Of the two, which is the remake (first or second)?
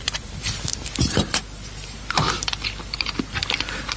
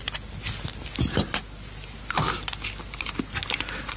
first